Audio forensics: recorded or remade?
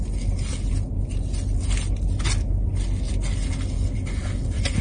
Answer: recorded